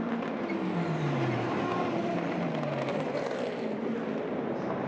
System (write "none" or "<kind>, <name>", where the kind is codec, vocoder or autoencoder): none